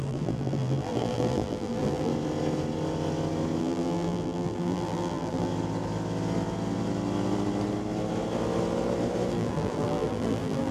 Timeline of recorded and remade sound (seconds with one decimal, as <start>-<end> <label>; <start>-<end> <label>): 0.0-2.1 remade; 2.1-3.6 recorded; 3.6-5.5 remade; 5.5-9.3 recorded; 9.3-10.7 remade